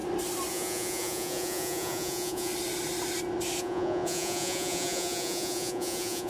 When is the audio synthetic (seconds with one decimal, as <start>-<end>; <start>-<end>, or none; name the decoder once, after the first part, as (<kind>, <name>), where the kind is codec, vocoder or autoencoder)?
0.5-2.5 (vocoder, Vocos); 3.6-6.3

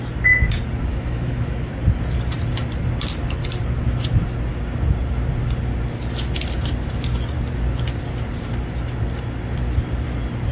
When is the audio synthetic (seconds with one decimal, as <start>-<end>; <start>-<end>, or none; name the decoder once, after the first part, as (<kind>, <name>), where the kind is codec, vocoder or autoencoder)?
0.9-1.7 (autoencoder, DAC-VAE)

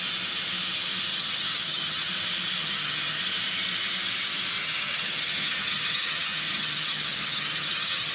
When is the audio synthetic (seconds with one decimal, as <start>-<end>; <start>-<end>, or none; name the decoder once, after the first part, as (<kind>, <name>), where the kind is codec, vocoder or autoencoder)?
1.1-2.1 (vocoder, HiFi-GAN); 2.6-3.2; 4.6-8.1

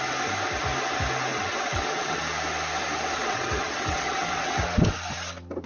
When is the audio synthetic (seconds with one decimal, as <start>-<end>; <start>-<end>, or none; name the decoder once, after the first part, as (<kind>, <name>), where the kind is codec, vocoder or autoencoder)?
1.3-2.2 (vocoder, WaveNeXt); 3.2-4.6

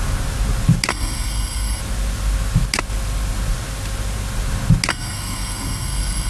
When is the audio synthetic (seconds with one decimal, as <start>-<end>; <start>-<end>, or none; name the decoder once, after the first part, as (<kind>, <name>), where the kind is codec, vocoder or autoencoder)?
0.9-1.8 (codec, SNAC); 4.9-6.3